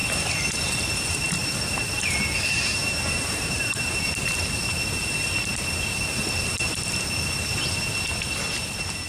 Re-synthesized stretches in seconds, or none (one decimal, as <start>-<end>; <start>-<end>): 2.8-4.0